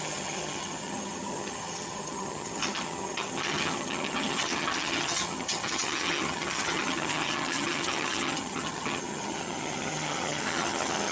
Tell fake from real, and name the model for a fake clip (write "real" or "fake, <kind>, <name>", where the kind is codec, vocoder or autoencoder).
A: fake, vocoder, HiFi-GAN